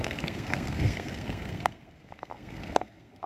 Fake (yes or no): yes